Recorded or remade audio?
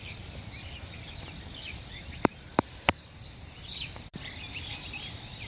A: remade